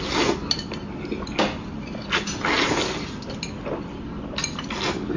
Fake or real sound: real